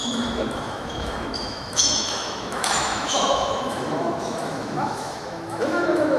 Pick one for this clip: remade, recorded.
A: remade